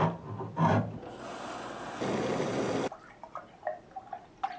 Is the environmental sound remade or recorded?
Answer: recorded